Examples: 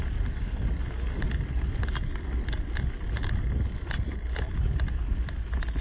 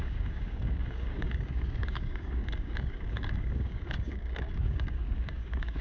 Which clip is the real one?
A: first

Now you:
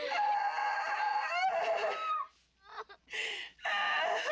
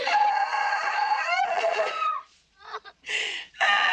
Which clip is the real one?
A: first